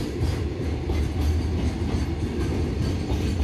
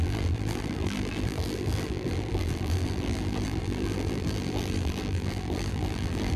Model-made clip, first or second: second